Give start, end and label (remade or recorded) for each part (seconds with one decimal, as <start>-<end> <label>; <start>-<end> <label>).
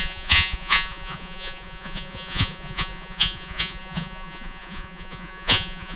0.0-6.0 remade